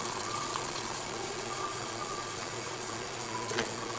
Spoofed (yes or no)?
yes